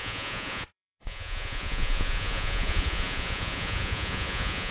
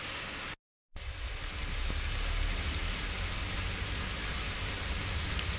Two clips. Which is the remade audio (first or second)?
first